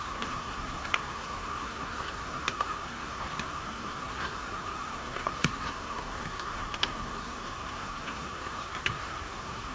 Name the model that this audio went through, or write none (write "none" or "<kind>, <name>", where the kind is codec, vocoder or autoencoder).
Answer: codec, SNAC